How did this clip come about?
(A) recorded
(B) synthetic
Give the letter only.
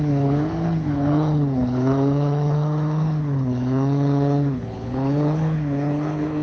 B